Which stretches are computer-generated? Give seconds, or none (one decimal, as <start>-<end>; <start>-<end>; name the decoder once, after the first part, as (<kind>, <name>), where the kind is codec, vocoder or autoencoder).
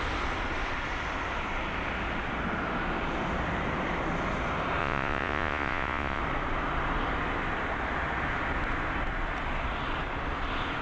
4.8-6.2 (vocoder, Vocos)